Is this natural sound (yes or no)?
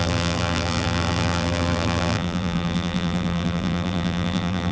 no